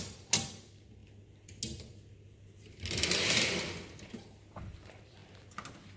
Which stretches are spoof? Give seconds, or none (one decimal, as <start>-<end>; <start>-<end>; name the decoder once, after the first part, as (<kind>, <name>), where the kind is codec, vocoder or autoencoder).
none